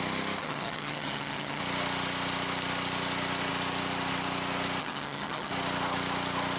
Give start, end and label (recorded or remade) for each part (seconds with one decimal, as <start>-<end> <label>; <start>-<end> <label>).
0.0-0.4 recorded; 0.4-1.6 remade; 1.6-4.8 recorded; 4.8-5.5 remade; 5.5-6.6 recorded